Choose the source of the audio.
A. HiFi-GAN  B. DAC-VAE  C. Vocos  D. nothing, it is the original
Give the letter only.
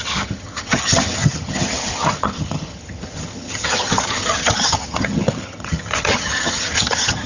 A